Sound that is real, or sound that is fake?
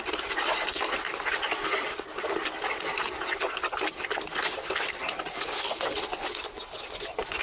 real